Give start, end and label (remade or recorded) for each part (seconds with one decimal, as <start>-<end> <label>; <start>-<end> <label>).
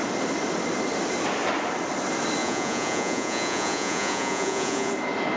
0.0-2.4 recorded; 2.4-4.9 remade; 4.9-5.4 recorded